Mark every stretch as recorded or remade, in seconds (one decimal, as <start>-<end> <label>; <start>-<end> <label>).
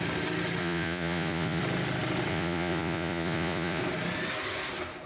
0.0-0.6 recorded; 0.6-1.6 remade; 1.6-2.3 recorded; 2.3-3.8 remade; 3.8-5.1 recorded